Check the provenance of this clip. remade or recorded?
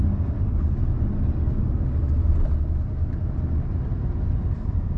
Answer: recorded